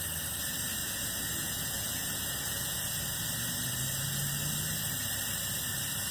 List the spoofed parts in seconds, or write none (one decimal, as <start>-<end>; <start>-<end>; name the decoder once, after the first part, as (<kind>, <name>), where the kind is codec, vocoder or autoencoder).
0.8-3.0 (vocoder, Vocos)